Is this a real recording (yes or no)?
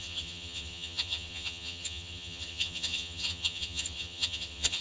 no